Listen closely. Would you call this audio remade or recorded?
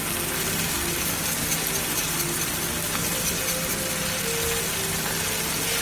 recorded